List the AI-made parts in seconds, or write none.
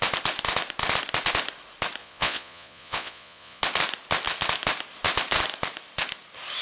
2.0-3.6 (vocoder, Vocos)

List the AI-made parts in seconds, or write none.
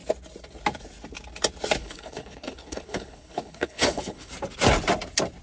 1.8-4.3 (codec, HILCodec)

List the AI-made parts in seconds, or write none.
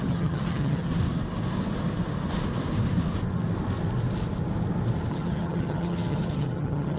0.0-0.9 (vocoder, HiFi-GAN); 5.1-7.0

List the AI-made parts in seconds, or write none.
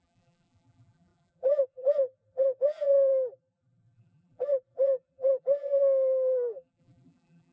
0.0-7.5 (vocoder, BigVGAN v2)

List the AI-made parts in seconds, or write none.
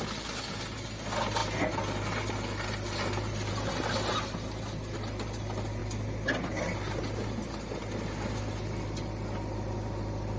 none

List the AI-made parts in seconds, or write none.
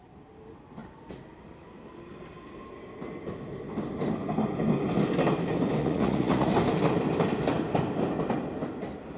5.8-6.5 (vocoder, Vocos)